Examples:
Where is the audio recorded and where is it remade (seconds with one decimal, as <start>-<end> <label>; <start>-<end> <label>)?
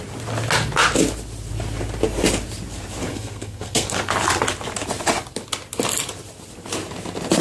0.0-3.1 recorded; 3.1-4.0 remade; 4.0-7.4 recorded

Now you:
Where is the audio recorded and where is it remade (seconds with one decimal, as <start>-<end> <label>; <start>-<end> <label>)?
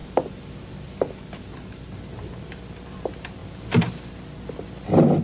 0.0-5.2 recorded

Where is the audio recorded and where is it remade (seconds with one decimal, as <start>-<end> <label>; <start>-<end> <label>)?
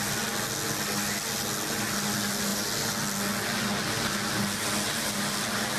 0.0-5.8 recorded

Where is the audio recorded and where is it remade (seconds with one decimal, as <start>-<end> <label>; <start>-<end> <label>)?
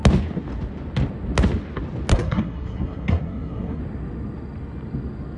0.0-2.1 recorded; 2.1-3.8 remade; 3.8-5.4 recorded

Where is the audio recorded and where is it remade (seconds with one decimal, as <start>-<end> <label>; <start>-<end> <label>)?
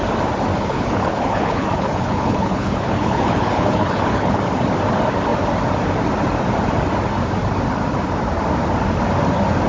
0.0-0.5 recorded; 0.5-4.4 remade; 4.4-9.7 recorded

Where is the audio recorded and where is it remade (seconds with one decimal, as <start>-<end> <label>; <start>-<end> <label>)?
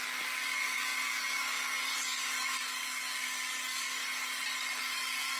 0.0-4.0 remade; 4.0-4.8 recorded; 4.8-5.4 remade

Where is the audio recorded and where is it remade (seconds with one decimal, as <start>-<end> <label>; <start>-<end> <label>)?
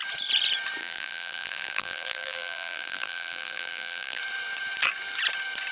0.0-0.8 recorded; 0.8-4.2 remade; 4.2-5.7 recorded